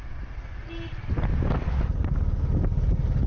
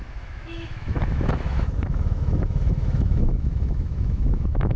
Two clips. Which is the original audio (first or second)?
first